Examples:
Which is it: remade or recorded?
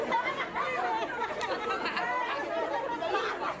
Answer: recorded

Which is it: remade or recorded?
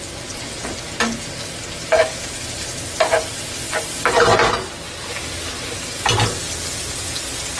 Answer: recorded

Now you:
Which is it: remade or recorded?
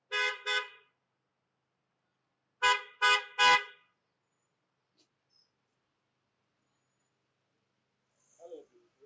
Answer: recorded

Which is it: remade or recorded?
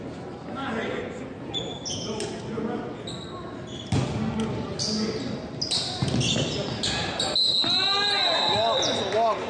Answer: recorded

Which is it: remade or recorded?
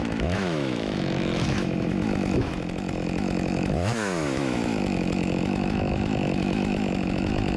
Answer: remade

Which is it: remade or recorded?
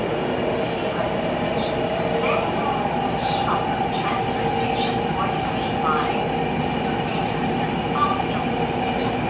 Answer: recorded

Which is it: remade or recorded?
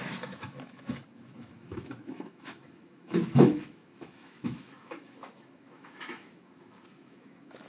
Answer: remade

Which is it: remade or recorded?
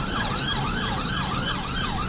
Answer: recorded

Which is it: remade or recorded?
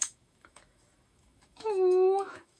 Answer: remade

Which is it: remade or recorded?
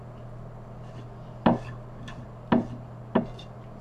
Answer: recorded